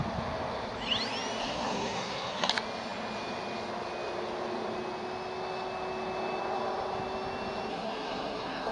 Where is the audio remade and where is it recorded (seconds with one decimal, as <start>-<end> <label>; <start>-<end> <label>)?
0.0-1.4 recorded; 1.4-2.5 remade; 2.5-7.7 recorded; 7.7-8.7 remade